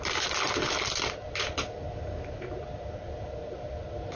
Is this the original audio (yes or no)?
yes